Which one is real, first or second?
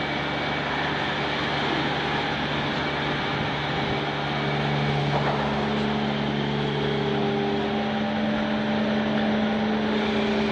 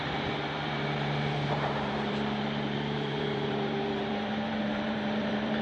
first